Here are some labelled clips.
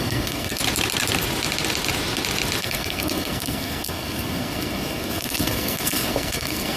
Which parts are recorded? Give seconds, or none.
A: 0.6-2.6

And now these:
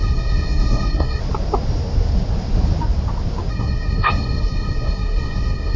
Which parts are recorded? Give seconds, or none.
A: 1.2-3.5

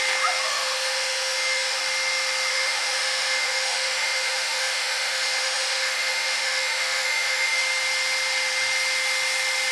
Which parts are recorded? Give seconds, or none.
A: 0.0-0.5; 1.8-2.5; 7.6-9.7

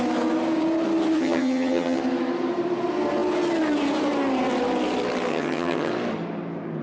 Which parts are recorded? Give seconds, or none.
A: 0.0-1.2; 2.0-5.3; 5.9-6.8